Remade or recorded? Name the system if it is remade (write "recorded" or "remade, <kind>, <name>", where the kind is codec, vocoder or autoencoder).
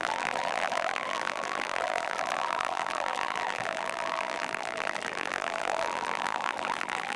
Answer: remade, vocoder, BigVGAN v2